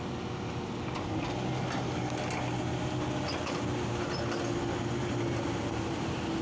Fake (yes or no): no